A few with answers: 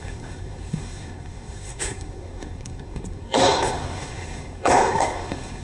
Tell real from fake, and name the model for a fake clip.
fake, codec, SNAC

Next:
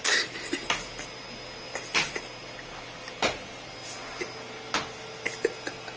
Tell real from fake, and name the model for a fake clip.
real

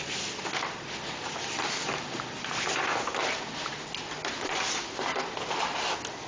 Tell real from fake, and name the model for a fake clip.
real